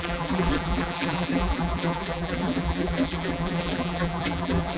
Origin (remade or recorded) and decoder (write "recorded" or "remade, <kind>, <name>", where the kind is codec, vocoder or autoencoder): remade, vocoder, BigVGAN v2